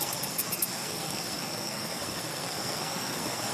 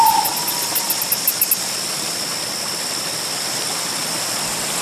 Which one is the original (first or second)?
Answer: second